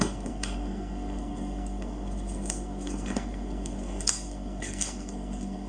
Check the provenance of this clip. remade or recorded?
remade